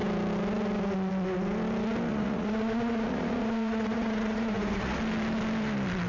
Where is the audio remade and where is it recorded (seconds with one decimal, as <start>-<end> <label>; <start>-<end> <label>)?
0.0-2.1 recorded; 2.1-5.0 remade; 5.0-6.1 recorded